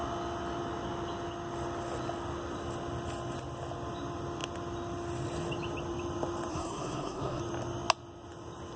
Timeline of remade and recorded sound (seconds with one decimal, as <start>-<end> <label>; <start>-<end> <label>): 0.0-6.5 recorded; 6.5-7.4 remade; 7.4-8.8 recorded